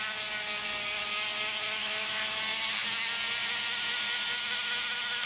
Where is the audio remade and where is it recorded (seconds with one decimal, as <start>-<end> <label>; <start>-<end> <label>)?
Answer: 0.0-1.8 recorded; 1.8-2.4 remade; 2.4-5.3 recorded